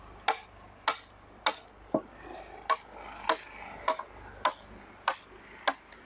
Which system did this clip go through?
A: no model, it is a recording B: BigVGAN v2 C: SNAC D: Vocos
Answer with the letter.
A